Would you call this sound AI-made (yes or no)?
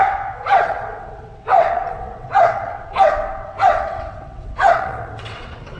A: yes